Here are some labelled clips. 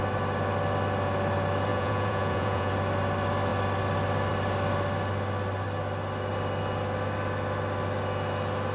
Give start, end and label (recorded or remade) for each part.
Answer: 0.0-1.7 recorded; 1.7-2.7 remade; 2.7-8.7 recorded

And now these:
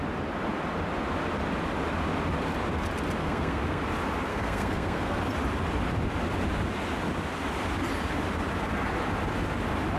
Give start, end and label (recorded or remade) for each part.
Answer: 0.0-3.2 recorded; 3.2-3.8 remade; 3.8-4.3 recorded; 4.3-5.2 remade; 5.2-10.0 recorded

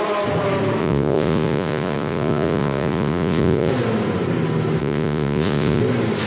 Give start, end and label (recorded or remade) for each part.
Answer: 0.0-0.8 recorded; 0.8-3.7 remade; 3.7-4.8 recorded; 4.8-5.8 remade; 5.8-6.3 recorded

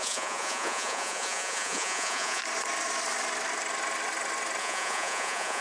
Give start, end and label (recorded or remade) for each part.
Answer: 0.0-2.4 remade; 2.4-4.6 recorded; 4.6-5.6 remade

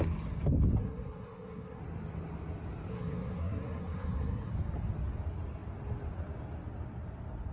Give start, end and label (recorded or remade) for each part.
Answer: 0.0-0.8 recorded; 0.8-1.8 remade; 1.8-2.9 recorded; 2.9-4.5 remade; 4.5-7.5 recorded